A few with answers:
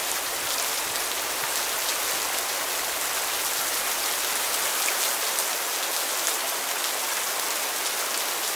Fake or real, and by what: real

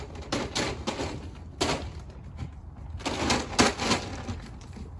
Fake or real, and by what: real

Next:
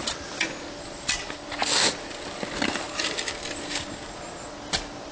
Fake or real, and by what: real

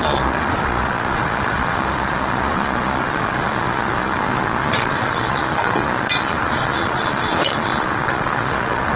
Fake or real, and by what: fake, vocoder, Vocos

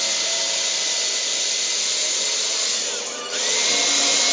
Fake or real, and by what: real